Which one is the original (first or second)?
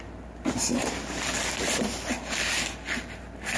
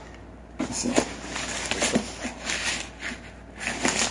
second